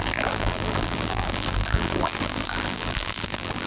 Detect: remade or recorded remade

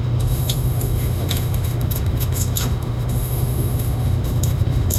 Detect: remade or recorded remade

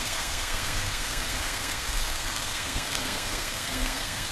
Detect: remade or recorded remade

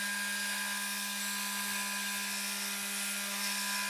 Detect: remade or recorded recorded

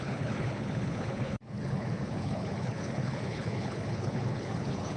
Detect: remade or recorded remade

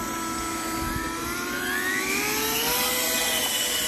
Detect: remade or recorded recorded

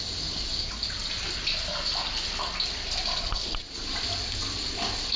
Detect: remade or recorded recorded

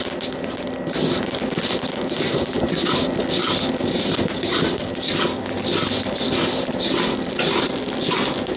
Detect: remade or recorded recorded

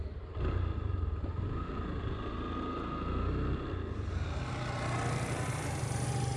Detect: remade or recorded recorded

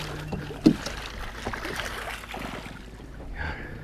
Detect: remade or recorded recorded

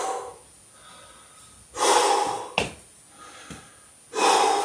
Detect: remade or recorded recorded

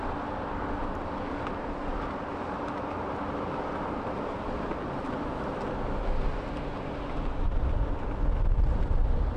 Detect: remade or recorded recorded